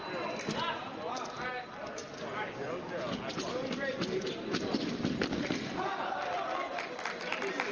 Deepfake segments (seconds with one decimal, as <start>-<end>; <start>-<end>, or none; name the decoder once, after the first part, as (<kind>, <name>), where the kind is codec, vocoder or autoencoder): none